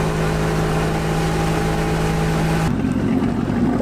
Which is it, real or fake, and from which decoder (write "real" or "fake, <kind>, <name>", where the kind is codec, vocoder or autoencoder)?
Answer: real